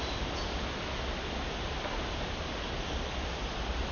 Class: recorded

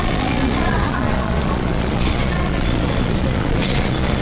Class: remade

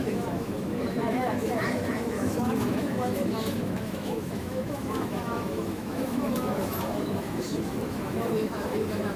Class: remade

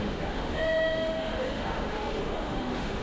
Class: remade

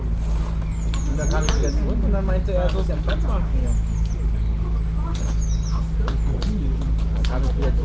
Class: recorded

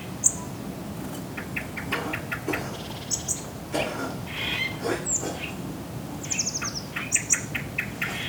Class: recorded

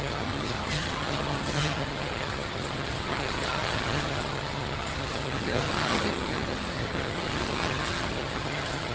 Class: remade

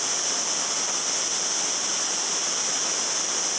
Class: recorded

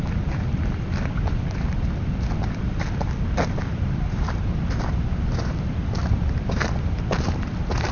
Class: remade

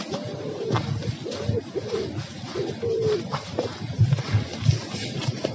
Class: recorded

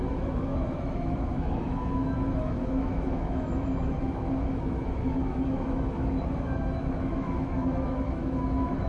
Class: remade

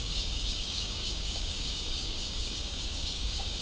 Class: remade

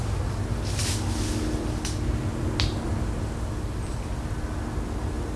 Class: recorded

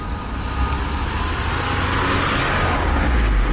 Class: recorded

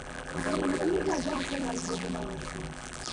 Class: remade